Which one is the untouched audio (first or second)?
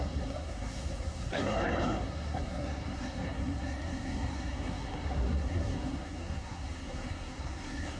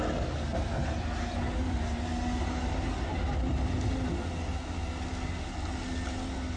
second